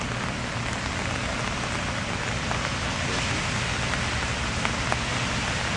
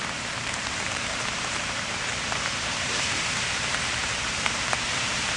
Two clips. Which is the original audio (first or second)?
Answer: first